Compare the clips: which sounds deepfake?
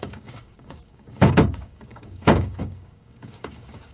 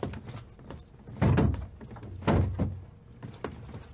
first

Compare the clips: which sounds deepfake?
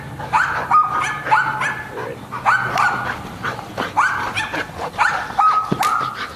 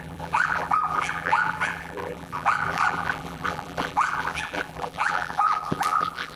second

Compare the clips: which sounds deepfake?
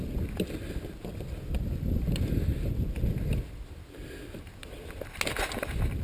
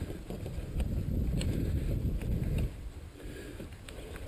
second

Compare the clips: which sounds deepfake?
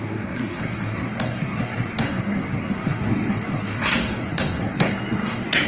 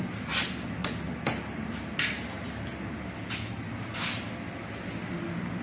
first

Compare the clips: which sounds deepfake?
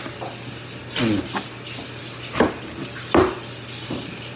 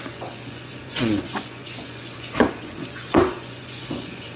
second